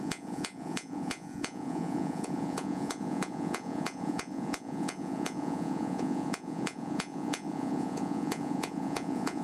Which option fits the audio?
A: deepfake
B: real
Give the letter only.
A